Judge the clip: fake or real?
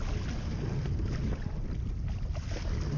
real